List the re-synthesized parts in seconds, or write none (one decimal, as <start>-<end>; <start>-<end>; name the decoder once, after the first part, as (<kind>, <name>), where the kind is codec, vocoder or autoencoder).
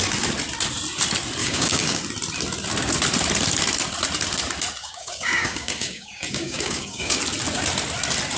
1.4-2.0 (codec, DAC); 4.8-7.2